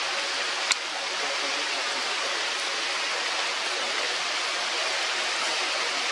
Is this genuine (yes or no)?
yes